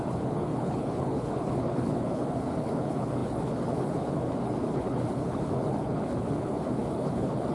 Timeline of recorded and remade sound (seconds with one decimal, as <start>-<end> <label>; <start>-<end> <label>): 0.0-7.5 remade